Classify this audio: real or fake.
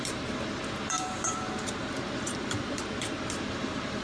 fake